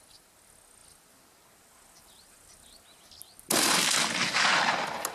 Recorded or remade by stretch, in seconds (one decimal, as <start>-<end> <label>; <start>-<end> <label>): 0.0-5.1 recorded

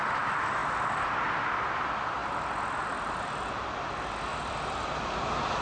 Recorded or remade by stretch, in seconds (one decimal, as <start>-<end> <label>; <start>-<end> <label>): 0.0-4.3 recorded; 4.3-5.0 remade; 5.0-5.6 recorded